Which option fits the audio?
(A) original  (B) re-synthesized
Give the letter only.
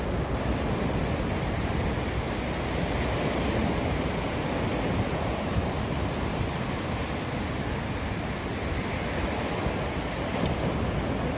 A